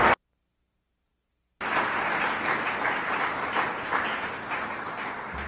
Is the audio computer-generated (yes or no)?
no